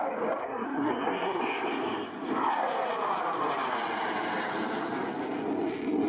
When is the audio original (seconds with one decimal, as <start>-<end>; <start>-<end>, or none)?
0.0-0.4; 1.4-6.1

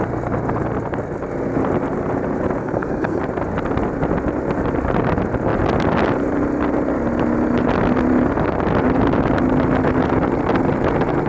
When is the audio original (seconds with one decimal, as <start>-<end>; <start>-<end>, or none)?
0.0-2.6; 3.2-11.3